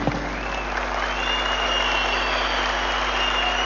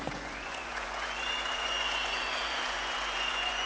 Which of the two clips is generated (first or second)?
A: second